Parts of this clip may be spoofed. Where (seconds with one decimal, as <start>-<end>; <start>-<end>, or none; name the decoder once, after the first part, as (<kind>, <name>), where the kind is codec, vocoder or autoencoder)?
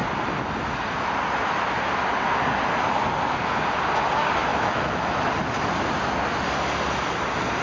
4.5-5.3 (autoencoder, DAC-VAE)